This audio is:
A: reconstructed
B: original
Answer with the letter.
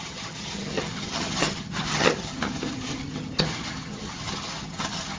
A